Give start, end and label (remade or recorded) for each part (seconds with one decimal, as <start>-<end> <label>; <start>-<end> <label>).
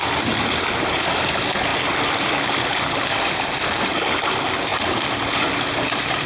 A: 0.0-6.3 recorded